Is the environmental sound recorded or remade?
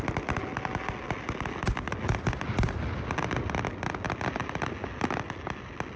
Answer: recorded